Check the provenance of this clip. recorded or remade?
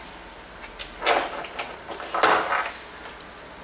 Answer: recorded